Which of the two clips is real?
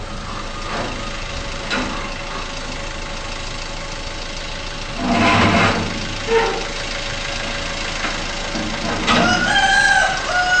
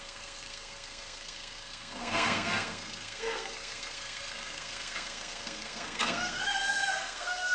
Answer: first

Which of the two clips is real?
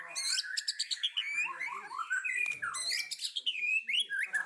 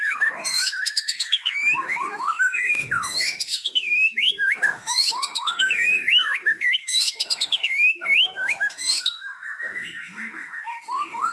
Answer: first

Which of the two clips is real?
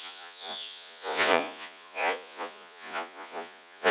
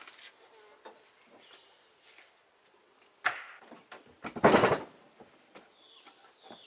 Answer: second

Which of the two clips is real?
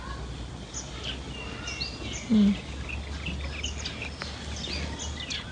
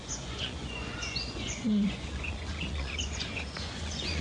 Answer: first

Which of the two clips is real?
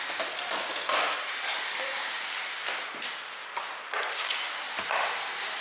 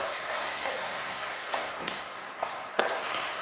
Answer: first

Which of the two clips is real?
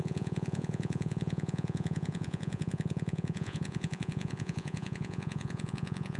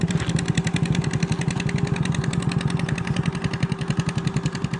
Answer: second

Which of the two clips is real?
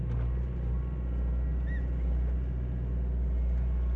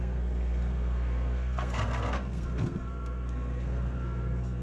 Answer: first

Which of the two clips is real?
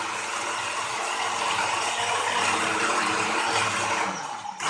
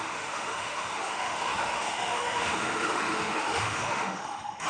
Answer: first